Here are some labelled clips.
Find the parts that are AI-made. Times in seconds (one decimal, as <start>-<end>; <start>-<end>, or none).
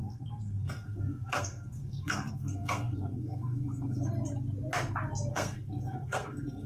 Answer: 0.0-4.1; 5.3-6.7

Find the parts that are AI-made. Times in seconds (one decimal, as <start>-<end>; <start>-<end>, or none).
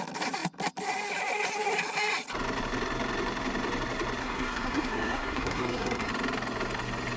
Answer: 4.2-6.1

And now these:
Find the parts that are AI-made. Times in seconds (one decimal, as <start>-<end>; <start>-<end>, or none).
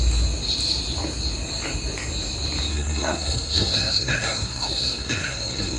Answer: 2.7-5.8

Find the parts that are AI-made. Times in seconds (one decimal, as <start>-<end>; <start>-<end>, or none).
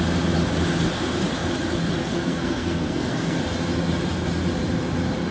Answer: 2.0-3.4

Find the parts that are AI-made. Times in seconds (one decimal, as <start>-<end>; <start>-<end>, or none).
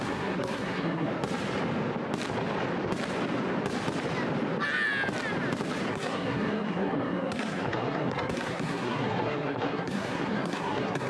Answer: 0.0-1.1; 5.9-11.1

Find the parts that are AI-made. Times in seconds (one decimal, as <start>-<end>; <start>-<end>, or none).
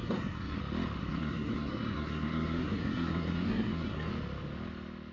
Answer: 0.0-0.6; 1.0-4.1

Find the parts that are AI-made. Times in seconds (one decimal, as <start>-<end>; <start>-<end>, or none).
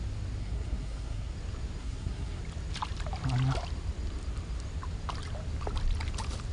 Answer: 0.4-1.3; 1.8-2.4